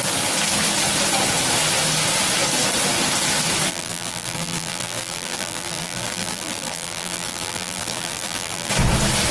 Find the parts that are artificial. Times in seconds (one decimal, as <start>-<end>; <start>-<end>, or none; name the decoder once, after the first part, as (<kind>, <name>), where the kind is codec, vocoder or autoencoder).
3.7-8.7 (vocoder, BigVGAN v2)